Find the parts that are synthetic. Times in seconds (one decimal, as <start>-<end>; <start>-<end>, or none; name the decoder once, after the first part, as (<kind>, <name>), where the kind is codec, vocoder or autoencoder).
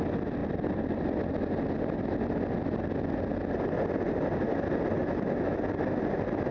5.0-5.6 (autoencoder, DAC-VAE)